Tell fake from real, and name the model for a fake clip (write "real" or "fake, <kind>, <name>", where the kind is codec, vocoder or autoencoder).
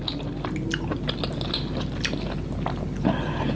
real